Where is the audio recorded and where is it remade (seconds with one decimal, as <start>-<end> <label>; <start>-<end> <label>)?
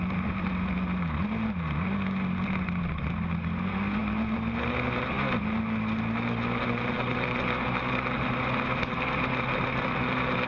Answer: 0.0-10.5 recorded